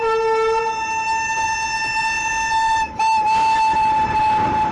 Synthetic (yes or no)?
no